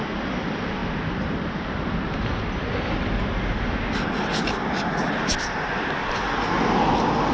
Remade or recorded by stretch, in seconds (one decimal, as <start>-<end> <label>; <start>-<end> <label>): 0.0-7.3 recorded